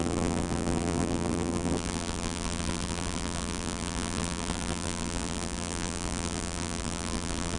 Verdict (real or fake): fake